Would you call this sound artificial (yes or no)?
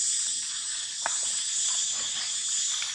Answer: no